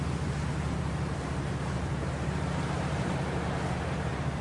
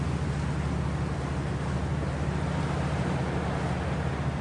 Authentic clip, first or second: second